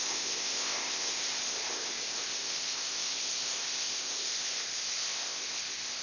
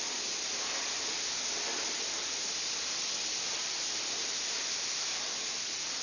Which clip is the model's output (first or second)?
first